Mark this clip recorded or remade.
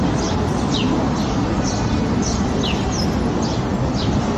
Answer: recorded